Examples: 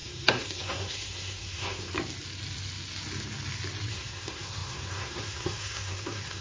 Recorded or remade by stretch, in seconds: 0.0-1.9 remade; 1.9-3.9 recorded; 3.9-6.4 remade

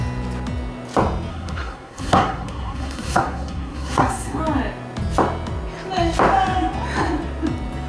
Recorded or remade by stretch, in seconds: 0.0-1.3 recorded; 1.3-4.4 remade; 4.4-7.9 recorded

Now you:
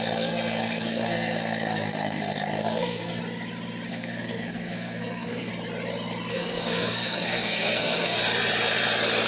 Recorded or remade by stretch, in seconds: 0.0-3.2 remade; 3.2-3.9 recorded; 3.9-5.5 remade; 5.5-6.3 recorded; 6.3-8.2 remade; 8.2-9.3 recorded

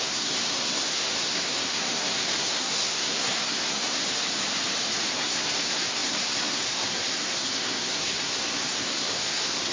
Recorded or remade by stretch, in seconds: 0.0-4.0 remade; 4.0-5.1 recorded; 5.1-9.7 remade